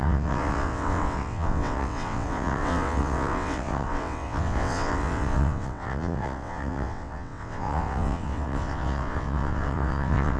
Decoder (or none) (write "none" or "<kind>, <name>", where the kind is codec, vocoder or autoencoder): vocoder, WaveNeXt